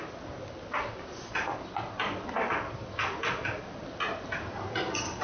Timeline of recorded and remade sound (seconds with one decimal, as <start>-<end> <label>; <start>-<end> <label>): 0.0-5.2 recorded